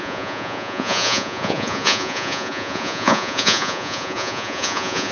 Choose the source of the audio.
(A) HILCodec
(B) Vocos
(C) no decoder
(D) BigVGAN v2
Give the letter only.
B